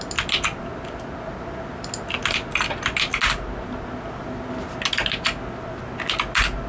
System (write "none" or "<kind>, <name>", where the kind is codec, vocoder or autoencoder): none